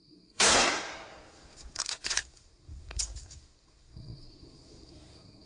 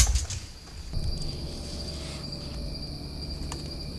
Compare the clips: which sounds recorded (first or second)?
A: second